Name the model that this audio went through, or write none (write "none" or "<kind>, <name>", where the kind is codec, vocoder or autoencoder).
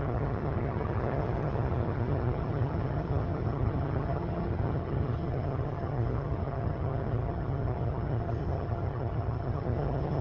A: vocoder, HiFi-GAN